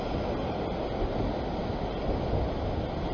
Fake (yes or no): no